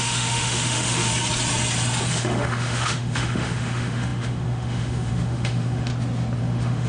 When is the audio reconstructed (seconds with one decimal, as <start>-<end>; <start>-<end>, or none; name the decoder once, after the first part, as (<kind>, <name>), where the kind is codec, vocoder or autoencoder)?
0.0-1.1 (autoencoder, DAC-VAE); 2.1-5.9; 6.4-6.9